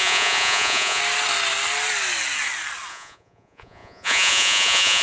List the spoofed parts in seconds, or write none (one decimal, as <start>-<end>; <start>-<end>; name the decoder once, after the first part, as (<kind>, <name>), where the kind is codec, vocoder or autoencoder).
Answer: 0.0-1.0 (vocoder, Vocos); 2.9-5.0